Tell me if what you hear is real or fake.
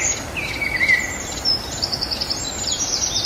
fake